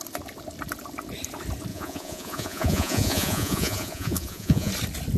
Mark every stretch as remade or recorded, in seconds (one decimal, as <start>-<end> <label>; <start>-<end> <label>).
0.0-1.7 recorded; 1.7-4.7 remade; 4.7-5.2 recorded